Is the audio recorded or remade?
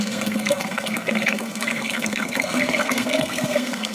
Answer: remade